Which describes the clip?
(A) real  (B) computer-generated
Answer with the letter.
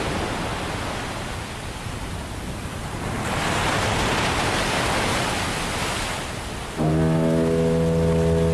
A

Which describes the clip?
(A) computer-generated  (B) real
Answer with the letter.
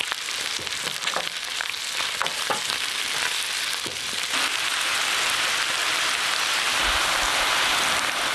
A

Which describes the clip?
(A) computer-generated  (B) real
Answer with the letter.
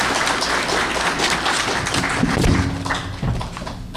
B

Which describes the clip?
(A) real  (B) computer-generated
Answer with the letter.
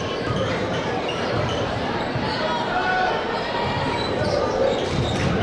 B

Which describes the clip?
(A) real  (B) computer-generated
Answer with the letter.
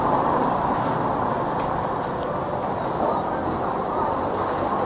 A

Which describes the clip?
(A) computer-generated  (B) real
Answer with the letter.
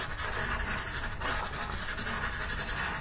B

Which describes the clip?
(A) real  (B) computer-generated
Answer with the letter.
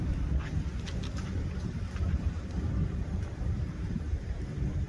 B